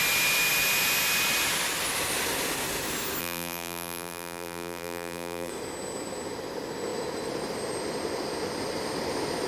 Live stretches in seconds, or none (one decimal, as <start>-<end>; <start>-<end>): 0.0-3.2; 5.5-9.5